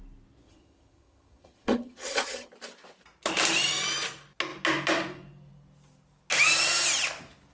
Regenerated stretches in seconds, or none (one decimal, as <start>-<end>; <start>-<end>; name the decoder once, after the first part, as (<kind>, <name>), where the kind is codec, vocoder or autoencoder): 0.4-2.5 (vocoder, HiFi-GAN)